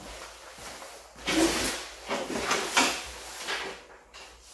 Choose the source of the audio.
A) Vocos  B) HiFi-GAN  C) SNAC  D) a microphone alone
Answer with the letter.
D